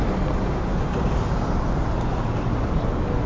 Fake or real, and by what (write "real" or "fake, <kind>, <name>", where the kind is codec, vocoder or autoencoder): real